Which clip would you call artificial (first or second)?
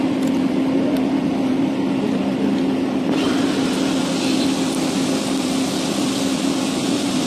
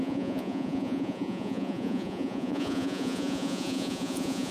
second